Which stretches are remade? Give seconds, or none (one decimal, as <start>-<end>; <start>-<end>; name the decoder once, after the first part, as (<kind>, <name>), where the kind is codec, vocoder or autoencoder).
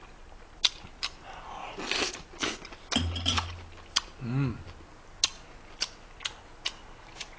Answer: none